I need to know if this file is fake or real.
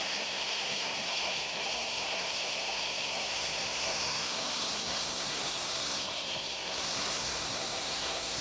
fake